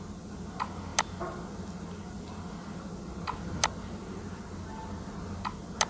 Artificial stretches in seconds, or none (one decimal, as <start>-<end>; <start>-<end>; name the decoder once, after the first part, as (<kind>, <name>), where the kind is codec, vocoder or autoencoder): none